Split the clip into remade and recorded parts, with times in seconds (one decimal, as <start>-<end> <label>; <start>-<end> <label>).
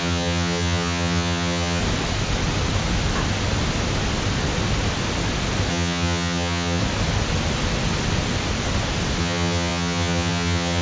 0.0-1.8 remade; 1.8-5.7 recorded; 5.7-6.8 remade; 6.8-9.2 recorded; 9.2-10.8 remade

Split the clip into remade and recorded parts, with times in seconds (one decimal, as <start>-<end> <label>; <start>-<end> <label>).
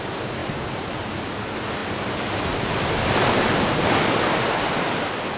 0.0-5.4 recorded